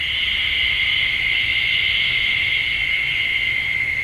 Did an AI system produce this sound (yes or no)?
no